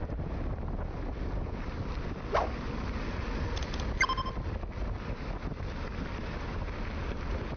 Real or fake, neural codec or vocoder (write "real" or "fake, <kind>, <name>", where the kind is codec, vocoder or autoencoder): real